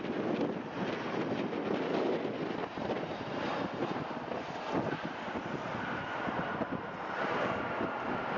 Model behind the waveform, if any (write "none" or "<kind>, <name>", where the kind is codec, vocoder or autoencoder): none